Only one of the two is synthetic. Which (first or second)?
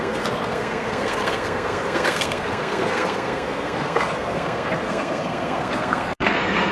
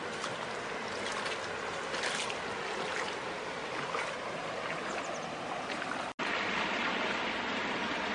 first